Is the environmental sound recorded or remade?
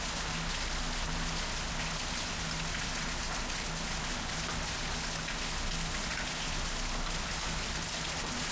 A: recorded